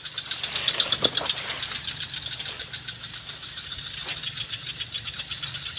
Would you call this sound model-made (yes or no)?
no